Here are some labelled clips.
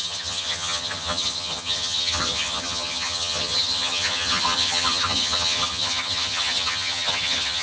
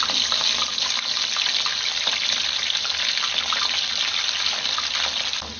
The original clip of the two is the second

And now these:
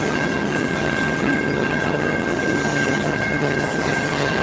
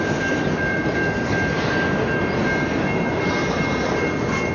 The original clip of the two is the second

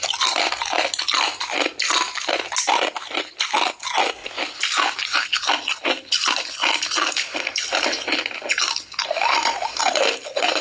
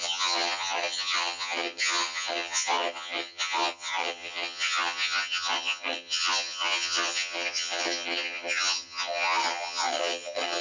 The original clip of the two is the first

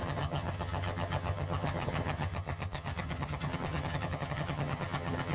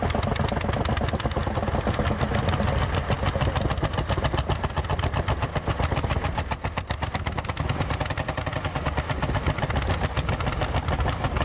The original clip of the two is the second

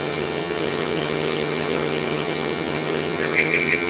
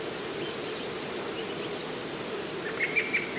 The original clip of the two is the second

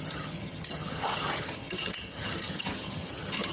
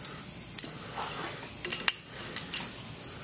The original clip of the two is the second